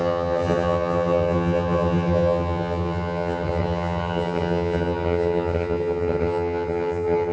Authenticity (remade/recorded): remade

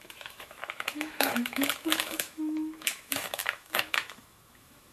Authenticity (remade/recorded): remade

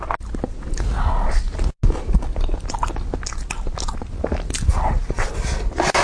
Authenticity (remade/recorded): recorded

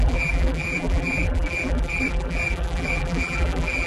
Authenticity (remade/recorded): remade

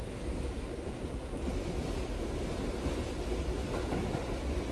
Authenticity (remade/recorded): recorded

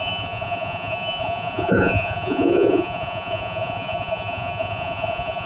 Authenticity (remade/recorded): remade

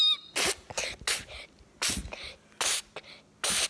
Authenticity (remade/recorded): recorded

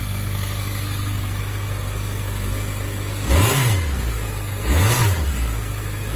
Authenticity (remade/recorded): remade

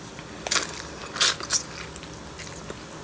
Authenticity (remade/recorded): recorded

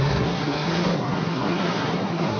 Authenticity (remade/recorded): remade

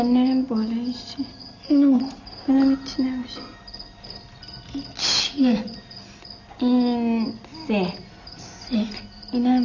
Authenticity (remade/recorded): recorded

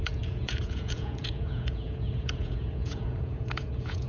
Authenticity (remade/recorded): remade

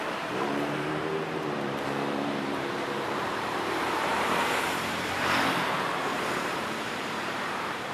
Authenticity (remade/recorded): remade